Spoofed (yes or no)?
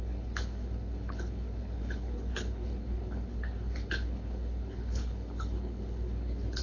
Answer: yes